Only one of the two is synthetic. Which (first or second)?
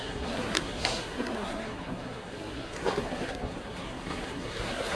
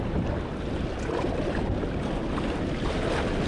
first